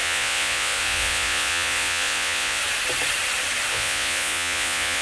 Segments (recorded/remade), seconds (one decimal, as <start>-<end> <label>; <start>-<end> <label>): 0.0-2.6 remade; 2.6-3.7 recorded; 3.7-5.0 remade